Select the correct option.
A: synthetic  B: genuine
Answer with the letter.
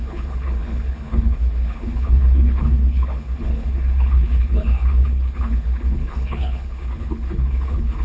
A